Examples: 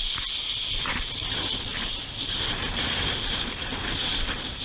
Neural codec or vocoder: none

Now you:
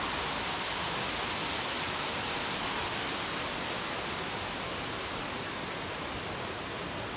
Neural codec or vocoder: none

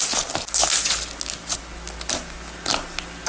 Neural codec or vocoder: none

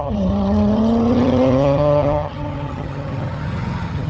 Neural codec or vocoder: vocoder, HiFi-GAN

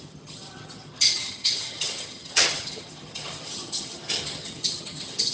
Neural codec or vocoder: vocoder, HiFi-GAN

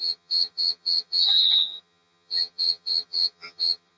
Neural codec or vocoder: vocoder, HiFi-GAN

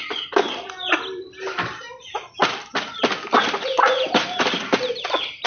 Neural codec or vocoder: none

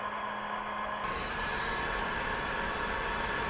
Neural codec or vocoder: none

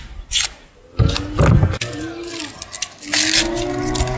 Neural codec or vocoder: none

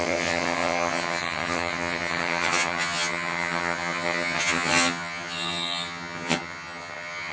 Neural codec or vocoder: vocoder, HiFi-GAN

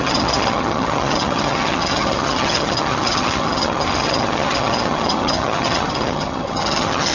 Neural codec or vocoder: vocoder, HiFi-GAN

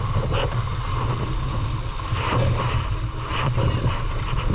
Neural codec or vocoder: none